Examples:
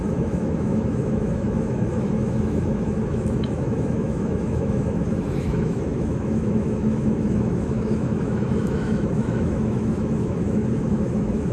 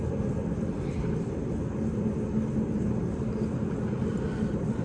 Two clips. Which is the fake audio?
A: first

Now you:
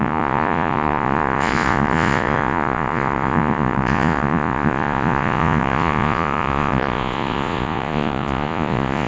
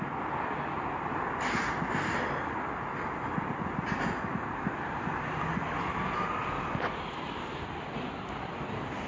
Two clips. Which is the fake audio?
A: first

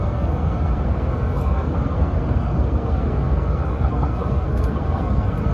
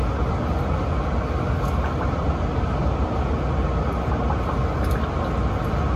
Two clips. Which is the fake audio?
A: first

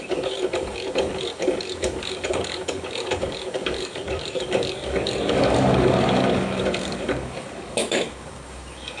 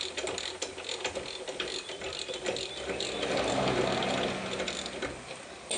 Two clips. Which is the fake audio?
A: first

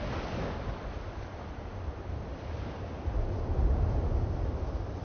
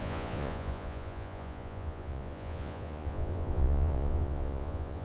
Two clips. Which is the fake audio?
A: second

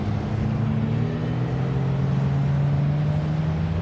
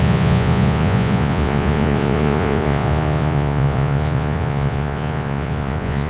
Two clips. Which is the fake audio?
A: second